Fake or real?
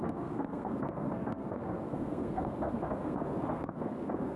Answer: fake